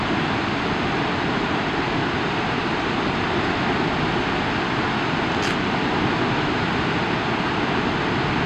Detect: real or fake real